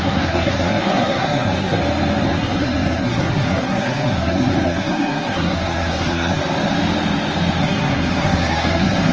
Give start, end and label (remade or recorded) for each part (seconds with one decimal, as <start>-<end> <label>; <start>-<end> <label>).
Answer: 0.0-1.8 remade; 1.8-2.3 recorded; 2.3-6.4 remade; 6.4-7.6 recorded; 7.6-9.1 remade

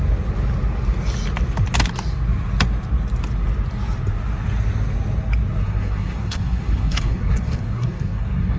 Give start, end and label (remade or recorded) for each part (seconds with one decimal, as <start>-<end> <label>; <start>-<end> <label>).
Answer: 0.0-5.6 recorded; 5.6-8.6 remade

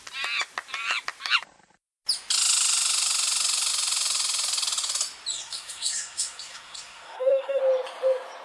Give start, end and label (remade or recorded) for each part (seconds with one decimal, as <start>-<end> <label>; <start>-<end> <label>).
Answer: 0.0-5.3 recorded; 5.3-7.6 remade; 7.6-8.4 recorded

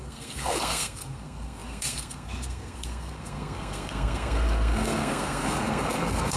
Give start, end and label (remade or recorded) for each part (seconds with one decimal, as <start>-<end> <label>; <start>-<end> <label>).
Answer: 0.0-6.4 remade